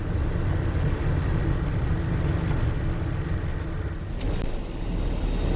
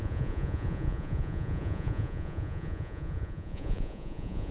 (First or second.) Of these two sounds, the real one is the first